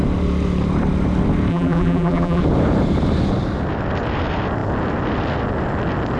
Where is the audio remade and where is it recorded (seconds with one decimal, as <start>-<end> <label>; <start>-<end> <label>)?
0.0-1.5 recorded; 1.5-2.4 remade; 2.4-6.2 recorded